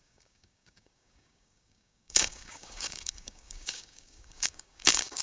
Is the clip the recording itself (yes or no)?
no